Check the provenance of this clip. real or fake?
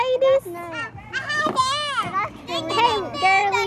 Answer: real